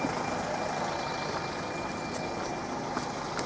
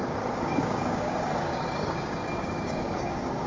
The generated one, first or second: second